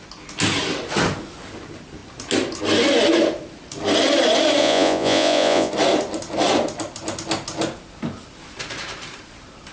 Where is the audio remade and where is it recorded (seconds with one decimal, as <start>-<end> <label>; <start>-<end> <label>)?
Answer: 0.0-4.6 recorded; 4.6-5.7 remade; 5.7-9.7 recorded